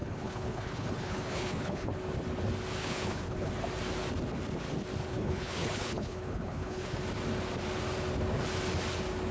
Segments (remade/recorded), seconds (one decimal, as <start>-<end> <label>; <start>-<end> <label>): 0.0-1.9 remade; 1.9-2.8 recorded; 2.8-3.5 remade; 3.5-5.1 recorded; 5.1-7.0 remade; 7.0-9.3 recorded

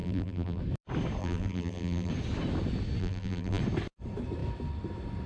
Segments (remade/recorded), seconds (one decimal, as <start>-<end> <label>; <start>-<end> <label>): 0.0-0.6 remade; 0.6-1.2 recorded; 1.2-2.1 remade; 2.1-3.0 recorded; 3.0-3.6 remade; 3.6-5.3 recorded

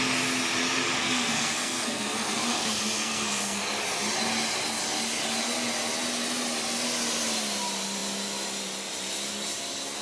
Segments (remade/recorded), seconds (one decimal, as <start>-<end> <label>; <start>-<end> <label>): 0.0-1.0 recorded; 1.0-3.6 remade; 3.6-10.0 recorded

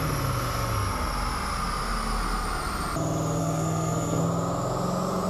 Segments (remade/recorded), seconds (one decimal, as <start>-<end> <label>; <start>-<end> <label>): 0.0-3.4 recorded; 3.4-4.2 remade; 4.2-5.3 recorded

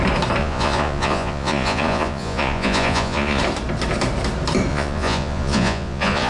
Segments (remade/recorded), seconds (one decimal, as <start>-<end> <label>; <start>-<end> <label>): 0.0-0.4 recorded; 0.4-3.4 remade; 3.4-4.7 recorded; 4.7-6.3 remade